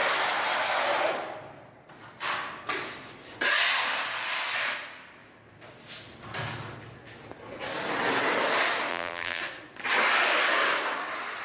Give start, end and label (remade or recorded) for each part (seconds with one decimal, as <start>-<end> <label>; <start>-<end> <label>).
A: 0.0-8.9 recorded; 8.9-9.4 remade; 9.4-11.4 recorded

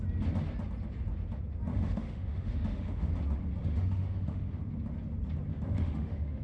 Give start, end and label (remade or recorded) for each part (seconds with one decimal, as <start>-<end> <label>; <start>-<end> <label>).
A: 0.0-1.7 recorded; 1.7-3.1 remade; 3.1-3.6 recorded; 3.6-4.6 remade; 4.6-5.5 recorded; 5.5-6.4 remade

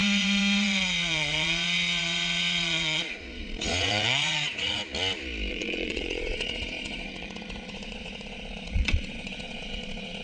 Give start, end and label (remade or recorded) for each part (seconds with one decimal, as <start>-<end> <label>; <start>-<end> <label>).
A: 0.0-4.8 remade; 4.8-5.5 recorded; 5.5-10.2 remade

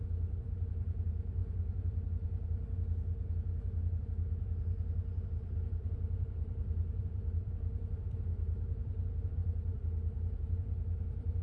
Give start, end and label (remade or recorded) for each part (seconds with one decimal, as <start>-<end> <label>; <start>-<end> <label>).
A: 0.0-1.4 remade; 1.4-4.0 recorded; 4.0-11.4 remade

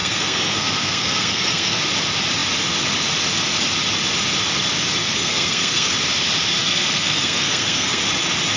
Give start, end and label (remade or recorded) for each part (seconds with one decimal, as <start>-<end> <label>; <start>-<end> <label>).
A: 0.0-1.8 remade; 1.8-5.0 recorded; 5.0-5.9 remade; 5.9-6.6 recorded; 6.6-8.0 remade; 8.0-8.6 recorded

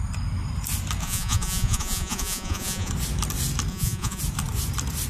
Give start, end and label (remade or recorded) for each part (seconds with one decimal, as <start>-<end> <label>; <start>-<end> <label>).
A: 0.0-1.0 recorded; 1.0-2.9 remade; 2.9-3.7 recorded; 3.7-4.2 remade; 4.2-5.1 recorded